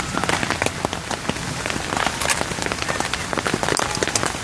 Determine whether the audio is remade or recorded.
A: recorded